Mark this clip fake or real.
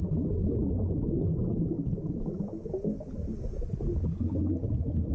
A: real